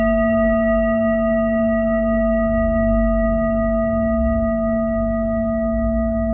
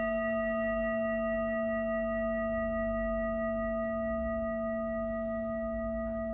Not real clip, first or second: first